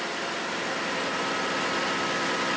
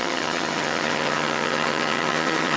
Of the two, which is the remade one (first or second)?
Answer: second